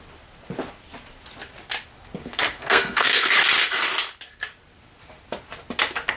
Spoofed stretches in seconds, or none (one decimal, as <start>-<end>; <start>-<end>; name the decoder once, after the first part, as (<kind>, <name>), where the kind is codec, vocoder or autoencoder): 2.2-3.3 (codec, SNAC)